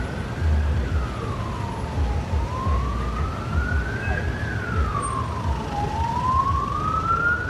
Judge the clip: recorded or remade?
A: recorded